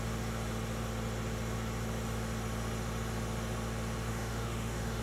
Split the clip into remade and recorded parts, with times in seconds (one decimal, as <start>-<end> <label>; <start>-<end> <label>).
0.0-4.1 recorded; 4.1-5.0 remade